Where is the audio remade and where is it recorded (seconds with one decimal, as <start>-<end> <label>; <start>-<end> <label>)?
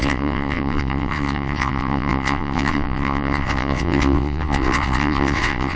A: 0.0-5.8 remade